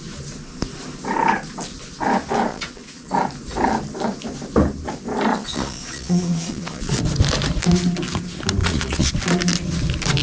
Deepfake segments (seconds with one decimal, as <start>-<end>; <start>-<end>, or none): 2.5-3.1; 5.3-7.0; 8.6-9.1